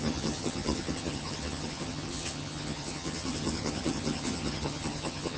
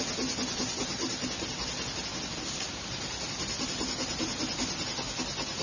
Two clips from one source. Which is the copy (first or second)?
first